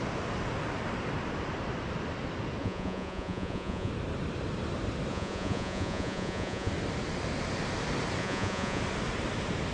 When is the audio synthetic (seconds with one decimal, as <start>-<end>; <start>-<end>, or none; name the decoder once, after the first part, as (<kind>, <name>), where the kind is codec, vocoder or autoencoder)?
2.6-3.9 (vocoder, Vocos); 5.1-6.7; 8.2-8.8